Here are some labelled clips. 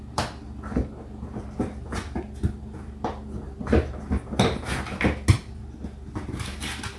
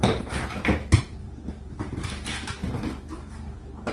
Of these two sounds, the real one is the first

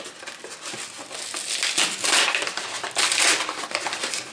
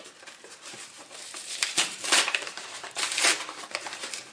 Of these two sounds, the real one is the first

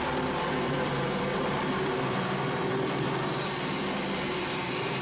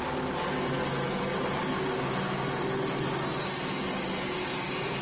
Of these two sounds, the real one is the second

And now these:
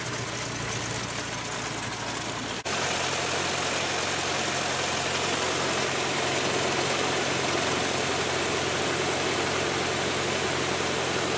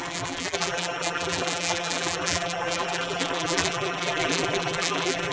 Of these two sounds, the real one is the first